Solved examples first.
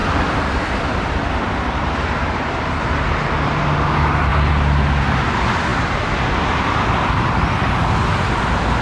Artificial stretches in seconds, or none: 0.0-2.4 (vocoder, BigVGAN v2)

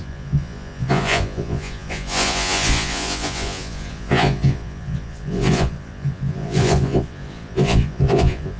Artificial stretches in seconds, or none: 0.0-8.6 (vocoder, Vocos)

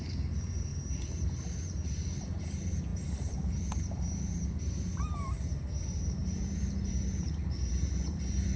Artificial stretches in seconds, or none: 0.0-8.6 (vocoder, BigVGAN v2)

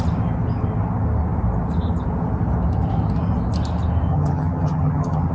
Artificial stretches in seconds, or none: 4.1-5.3 (vocoder, HiFi-GAN)

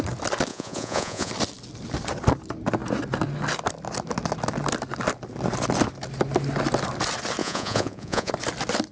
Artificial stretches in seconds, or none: 0.5-1.3 (vocoder, Vocos); 7.4-8.3

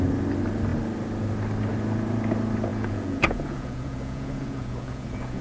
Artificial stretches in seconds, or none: 2.7-5.4 (vocoder, Vocos)

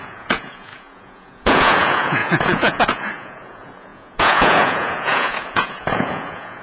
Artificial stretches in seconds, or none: 0.0-6.6 (vocoder, Vocos)